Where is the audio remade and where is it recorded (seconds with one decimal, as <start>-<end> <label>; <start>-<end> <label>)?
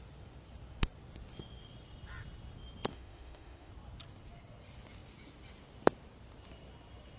0.0-2.9 recorded; 2.9-3.7 remade; 3.7-7.2 recorded